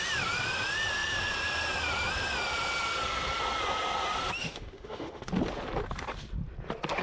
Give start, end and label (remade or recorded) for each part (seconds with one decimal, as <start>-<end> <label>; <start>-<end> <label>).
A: 0.0-4.4 recorded; 4.4-5.3 remade; 5.3-7.0 recorded

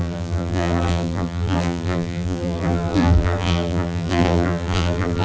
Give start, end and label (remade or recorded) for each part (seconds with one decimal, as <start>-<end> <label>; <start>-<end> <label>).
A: 0.0-5.2 remade

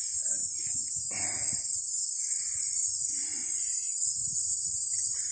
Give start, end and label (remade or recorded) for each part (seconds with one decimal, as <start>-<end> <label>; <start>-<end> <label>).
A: 0.0-5.3 recorded

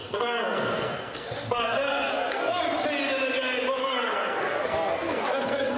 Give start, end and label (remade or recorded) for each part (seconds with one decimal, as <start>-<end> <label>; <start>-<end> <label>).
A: 0.0-2.6 remade; 2.6-3.8 recorded; 3.8-5.8 remade

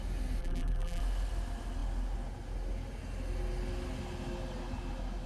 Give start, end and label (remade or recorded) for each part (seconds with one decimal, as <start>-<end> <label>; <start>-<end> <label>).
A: 0.0-0.4 recorded; 0.4-1.0 remade; 1.0-5.3 recorded